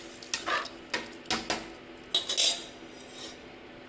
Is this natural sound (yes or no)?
yes